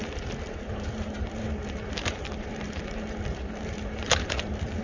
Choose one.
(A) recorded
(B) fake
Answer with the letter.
B